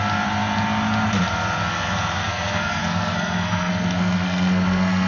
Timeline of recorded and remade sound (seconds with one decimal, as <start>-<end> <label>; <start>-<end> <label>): 0.0-2.2 recorded; 2.2-5.1 remade